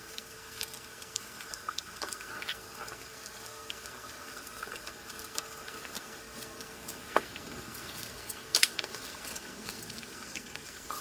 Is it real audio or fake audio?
fake